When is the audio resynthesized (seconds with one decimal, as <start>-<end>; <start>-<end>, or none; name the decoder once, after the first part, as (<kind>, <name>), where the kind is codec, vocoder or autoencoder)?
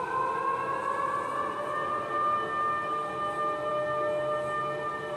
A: none